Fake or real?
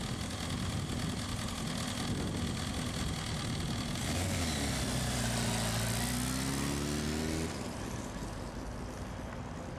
real